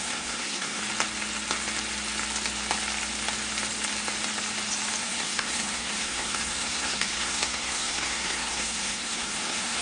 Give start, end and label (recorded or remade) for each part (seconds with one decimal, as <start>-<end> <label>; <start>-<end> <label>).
0.0-0.8 remade; 0.8-5.0 recorded; 5.0-9.8 remade

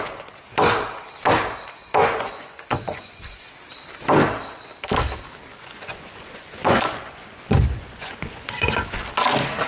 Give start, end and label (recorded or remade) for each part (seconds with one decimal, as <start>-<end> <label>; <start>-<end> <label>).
0.0-2.0 recorded; 2.0-3.5 remade; 3.5-5.5 recorded; 5.5-9.0 remade; 9.0-9.7 recorded

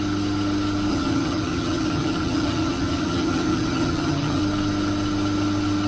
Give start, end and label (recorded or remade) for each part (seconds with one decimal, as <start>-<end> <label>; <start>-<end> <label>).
0.0-0.9 recorded; 0.9-4.4 remade; 4.4-5.9 recorded

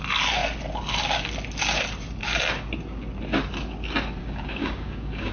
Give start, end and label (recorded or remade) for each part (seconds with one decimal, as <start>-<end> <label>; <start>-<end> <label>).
0.0-4.2 recorded; 4.2-5.3 remade

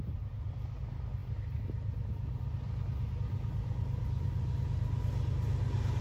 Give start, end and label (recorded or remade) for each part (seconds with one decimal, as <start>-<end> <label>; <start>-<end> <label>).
0.0-6.0 recorded

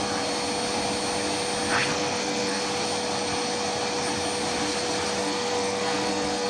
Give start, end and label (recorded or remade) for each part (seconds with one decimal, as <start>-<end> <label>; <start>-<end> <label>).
0.0-1.9 recorded; 1.9-2.6 remade; 2.6-5.2 recorded; 5.2-6.5 remade

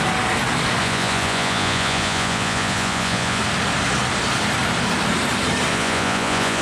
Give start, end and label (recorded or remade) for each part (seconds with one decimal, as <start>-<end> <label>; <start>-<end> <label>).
0.0-0.8 recorded; 0.8-3.4 remade; 3.4-5.7 recorded; 5.7-6.6 remade